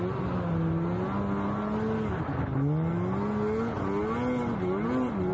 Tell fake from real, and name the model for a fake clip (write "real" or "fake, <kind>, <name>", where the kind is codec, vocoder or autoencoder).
real